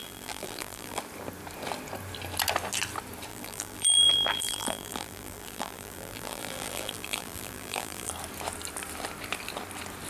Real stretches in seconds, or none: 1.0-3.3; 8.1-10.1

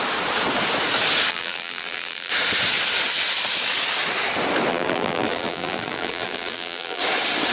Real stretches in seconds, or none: 0.0-1.3; 2.3-4.7; 7.0-7.5

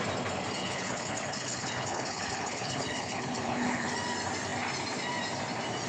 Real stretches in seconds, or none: 0.0-0.6; 3.9-5.9

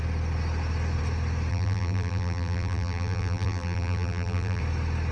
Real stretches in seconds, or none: 0.0-1.5; 4.6-5.1

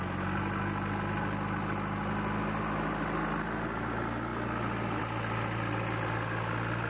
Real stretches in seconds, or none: 0.0-6.9

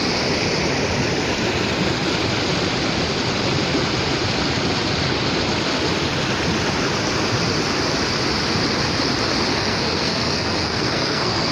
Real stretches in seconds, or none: 0.0-9.5